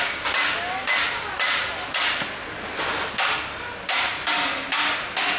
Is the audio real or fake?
real